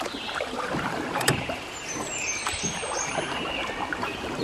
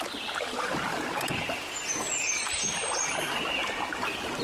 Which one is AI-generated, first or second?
first